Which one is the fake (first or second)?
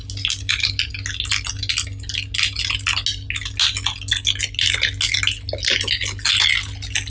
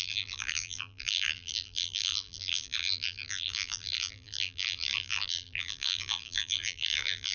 second